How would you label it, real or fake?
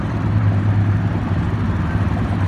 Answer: fake